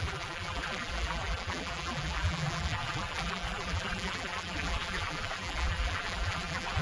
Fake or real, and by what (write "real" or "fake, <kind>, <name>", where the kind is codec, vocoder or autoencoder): fake, vocoder, BigVGAN v2